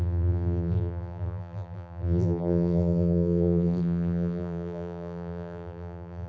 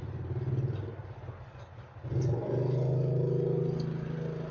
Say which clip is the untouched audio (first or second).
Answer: second